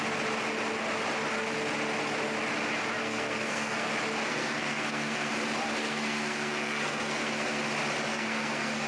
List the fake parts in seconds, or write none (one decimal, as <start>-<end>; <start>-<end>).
3.0-3.9; 4.3-5.3; 5.8-7.6; 8.1-8.9